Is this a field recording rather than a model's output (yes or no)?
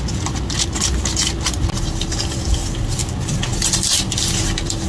yes